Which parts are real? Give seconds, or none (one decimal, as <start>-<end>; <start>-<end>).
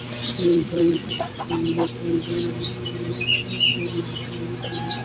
0.0-0.5; 1.5-5.0